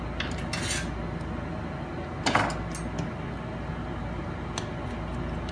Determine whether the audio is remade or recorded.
recorded